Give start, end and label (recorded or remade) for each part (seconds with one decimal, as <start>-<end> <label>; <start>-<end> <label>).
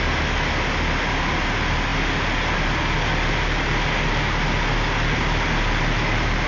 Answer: 0.0-6.5 recorded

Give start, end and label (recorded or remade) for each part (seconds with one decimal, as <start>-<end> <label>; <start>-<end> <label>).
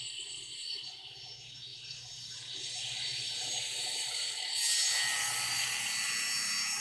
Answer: 0.0-1.7 recorded; 1.7-5.8 remade; 5.8-6.8 recorded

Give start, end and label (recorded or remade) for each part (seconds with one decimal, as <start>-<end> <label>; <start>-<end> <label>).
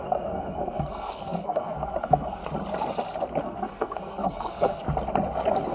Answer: 0.0-2.4 remade; 2.4-3.4 recorded; 3.4-4.8 remade; 4.8-5.7 recorded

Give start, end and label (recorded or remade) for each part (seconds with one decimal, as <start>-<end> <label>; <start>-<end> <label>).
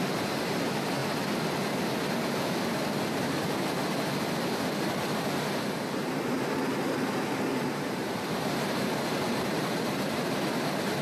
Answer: 0.0-7.5 recorded; 7.5-10.4 remade; 10.4-11.0 recorded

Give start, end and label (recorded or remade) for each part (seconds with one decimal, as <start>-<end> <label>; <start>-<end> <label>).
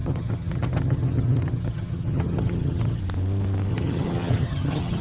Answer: 0.0-3.0 remade; 3.0-3.7 recorded; 3.7-5.0 remade